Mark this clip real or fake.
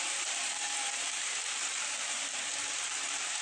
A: fake